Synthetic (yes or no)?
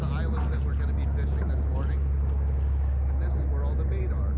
no